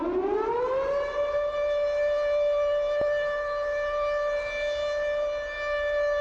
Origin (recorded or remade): recorded